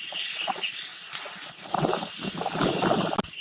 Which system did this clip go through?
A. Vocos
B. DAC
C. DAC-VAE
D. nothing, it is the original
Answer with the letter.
D